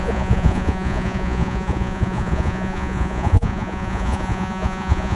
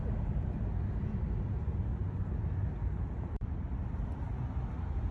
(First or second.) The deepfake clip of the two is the first